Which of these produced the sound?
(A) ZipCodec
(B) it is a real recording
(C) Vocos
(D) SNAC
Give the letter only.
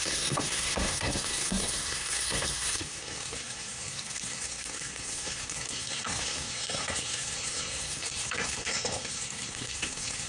D